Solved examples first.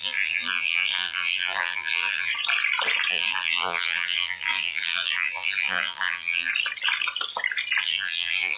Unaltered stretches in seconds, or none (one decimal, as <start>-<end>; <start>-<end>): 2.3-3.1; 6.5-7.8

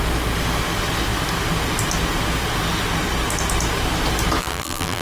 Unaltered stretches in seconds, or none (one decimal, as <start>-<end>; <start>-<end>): 0.0-4.4

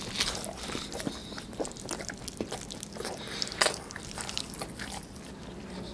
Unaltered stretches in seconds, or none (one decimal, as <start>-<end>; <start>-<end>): 0.0-1.2; 1.8-5.9

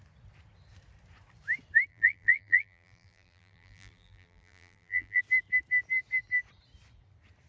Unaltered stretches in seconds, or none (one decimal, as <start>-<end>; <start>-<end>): 0.0-1.9; 5.2-7.5

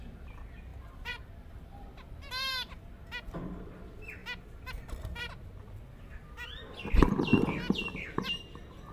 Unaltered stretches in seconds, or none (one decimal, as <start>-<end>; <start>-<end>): 0.0-0.7; 2.7-7.3; 8.4-8.9